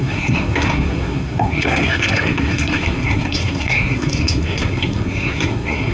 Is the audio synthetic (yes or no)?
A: yes